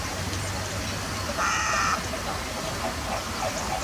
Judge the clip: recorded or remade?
recorded